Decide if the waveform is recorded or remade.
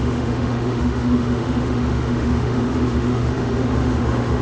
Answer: remade